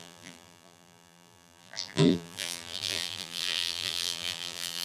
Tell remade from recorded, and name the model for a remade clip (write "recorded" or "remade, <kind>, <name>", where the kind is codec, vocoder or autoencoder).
remade, vocoder, BigVGAN v2